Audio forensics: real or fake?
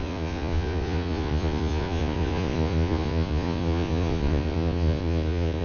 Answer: fake